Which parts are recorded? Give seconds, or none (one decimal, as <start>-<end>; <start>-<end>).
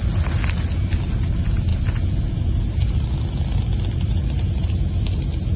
0.0-5.6